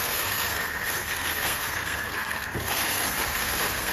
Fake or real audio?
fake